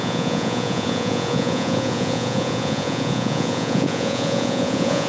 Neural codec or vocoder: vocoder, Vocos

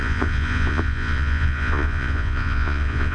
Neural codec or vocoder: vocoder, Vocos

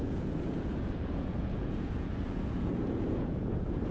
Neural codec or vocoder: vocoder, Vocos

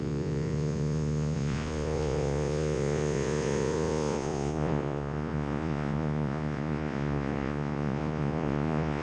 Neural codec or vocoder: vocoder, Vocos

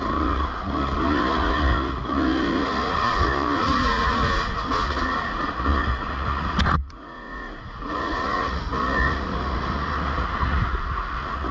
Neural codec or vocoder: vocoder, Vocos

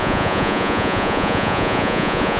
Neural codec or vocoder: vocoder, Vocos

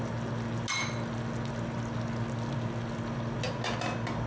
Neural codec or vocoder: none